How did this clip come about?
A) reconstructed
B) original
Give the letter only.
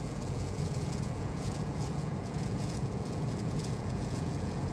A